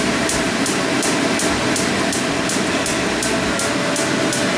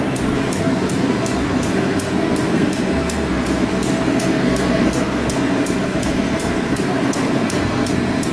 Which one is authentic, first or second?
first